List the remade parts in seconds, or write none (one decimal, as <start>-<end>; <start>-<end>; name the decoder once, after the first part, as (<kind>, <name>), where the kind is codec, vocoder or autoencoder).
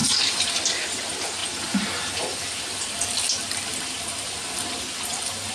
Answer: 0.0-0.5 (vocoder, BigVGAN v2)